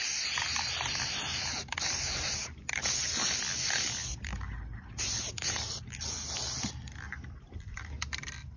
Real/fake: real